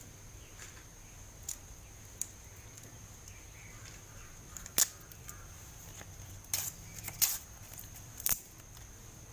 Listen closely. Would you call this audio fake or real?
real